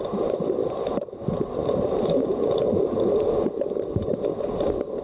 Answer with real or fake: real